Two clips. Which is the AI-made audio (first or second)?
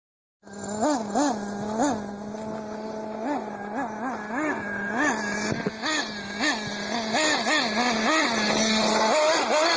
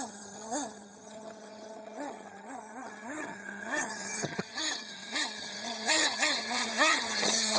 second